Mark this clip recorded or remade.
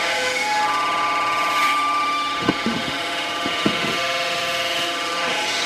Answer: remade